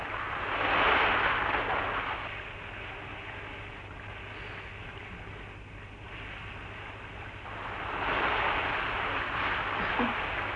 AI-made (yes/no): no